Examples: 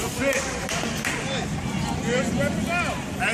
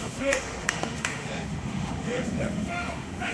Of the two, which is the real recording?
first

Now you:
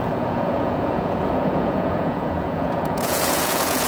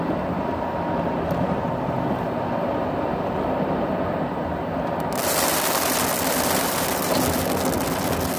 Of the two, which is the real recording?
second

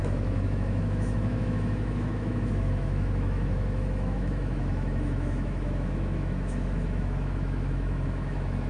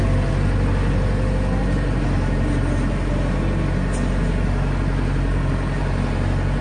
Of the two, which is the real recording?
second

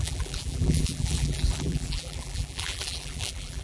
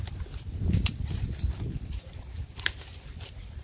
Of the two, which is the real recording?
second